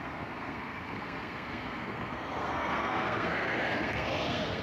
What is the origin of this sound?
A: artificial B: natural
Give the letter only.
A